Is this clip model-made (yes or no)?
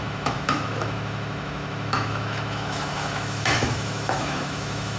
yes